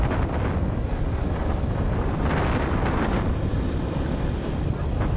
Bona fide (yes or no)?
no